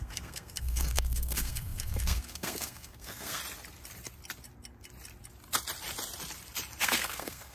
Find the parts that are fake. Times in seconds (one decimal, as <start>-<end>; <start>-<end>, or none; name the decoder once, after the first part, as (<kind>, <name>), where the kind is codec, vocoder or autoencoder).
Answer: 0.0-3.4 (codec, SNAC); 6.8-7.5